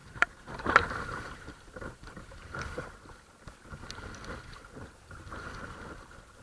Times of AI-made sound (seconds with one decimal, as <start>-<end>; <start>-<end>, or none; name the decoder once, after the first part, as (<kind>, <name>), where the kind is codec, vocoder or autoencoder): 0.0-2.6 (vocoder, BigVGAN v2)